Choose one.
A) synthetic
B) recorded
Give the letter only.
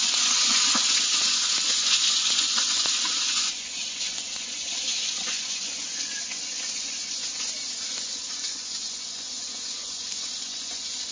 A